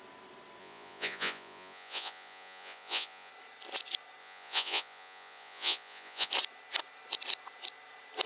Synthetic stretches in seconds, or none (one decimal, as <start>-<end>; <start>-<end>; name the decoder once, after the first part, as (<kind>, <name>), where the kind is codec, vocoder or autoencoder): 0.6-3.3 (vocoder, Vocos); 4.2-6.3